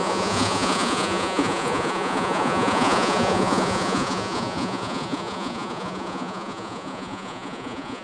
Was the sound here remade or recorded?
remade